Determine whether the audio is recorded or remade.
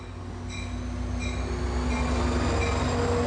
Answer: recorded